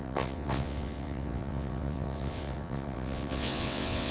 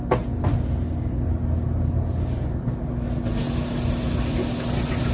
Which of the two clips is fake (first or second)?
first